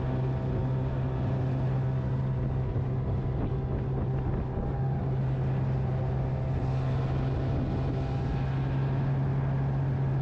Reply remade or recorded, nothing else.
recorded